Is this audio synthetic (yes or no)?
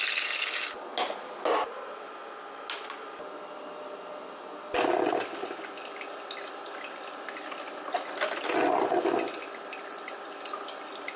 no